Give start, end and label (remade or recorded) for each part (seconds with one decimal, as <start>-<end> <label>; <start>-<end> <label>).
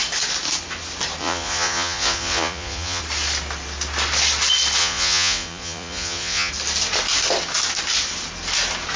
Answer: 0.0-1.2 recorded; 1.2-3.0 remade; 3.0-4.8 recorded; 4.8-6.5 remade; 6.5-9.0 recorded